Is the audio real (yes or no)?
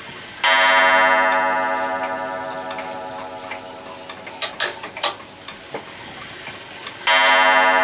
yes